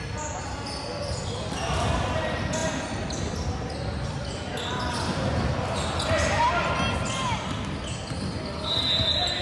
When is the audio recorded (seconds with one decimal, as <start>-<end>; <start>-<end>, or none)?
0.0-9.4